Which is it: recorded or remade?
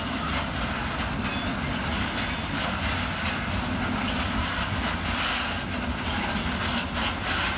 recorded